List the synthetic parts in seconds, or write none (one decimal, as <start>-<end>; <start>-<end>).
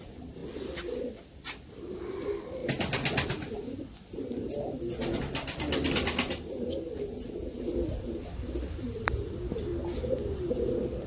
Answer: 0.0-0.4; 1.1-2.6; 6.5-9.7